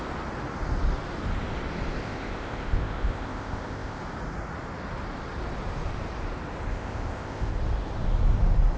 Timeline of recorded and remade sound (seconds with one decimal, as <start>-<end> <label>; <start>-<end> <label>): 0.0-2.0 recorded; 2.0-4.0 remade; 4.0-6.7 recorded; 6.7-7.5 remade; 7.5-8.8 recorded